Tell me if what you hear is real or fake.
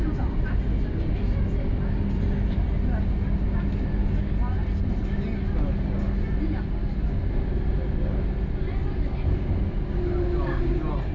real